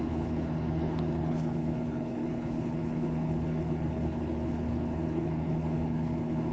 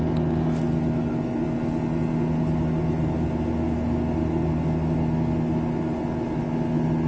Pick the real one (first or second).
second